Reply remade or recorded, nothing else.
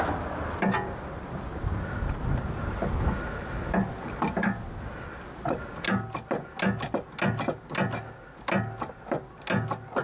recorded